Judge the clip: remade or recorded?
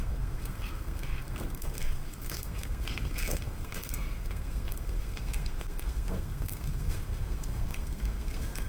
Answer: remade